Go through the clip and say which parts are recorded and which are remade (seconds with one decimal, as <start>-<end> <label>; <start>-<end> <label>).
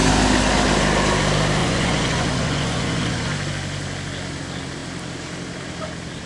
0.0-1.6 recorded; 1.6-3.3 remade; 3.3-6.3 recorded